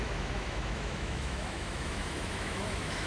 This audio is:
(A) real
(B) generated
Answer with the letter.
B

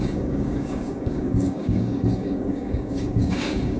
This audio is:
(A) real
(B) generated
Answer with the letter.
B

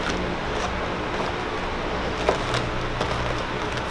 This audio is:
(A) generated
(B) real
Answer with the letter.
B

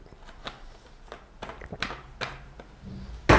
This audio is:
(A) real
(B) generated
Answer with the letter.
A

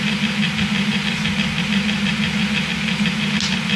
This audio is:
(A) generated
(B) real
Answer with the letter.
B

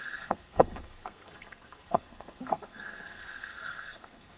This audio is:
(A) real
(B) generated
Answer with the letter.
B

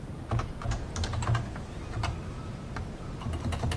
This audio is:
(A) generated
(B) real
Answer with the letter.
B